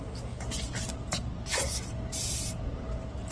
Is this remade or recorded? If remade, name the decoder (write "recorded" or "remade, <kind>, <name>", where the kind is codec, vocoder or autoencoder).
recorded